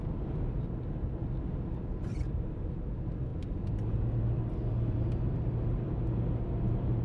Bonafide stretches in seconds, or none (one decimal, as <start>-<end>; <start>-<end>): 0.0-7.0